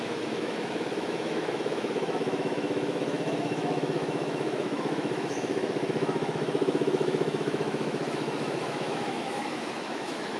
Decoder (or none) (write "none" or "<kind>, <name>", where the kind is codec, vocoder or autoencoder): autoencoder, DAC-VAE